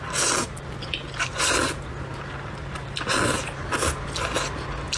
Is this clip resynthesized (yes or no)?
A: no